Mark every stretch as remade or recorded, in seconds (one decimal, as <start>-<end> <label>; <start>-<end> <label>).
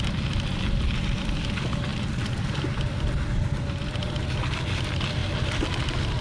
0.0-6.2 recorded